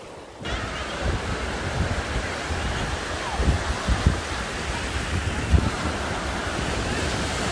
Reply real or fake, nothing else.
real